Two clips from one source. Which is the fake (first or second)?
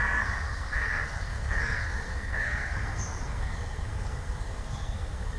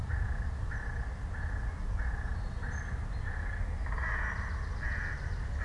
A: first